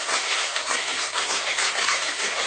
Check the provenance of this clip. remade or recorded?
remade